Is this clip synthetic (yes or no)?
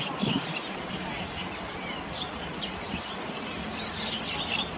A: no